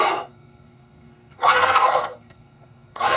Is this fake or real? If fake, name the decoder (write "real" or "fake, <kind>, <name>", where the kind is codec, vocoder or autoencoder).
fake, codec, SNAC